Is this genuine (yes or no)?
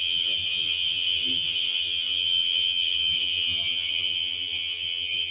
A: no